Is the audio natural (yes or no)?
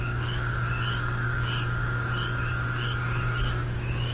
no